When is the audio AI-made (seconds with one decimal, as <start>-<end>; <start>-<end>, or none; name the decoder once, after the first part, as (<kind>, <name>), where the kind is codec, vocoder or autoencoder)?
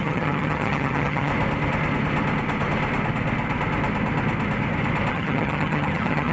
0.0-1.3 (vocoder, HiFi-GAN); 5.1-6.3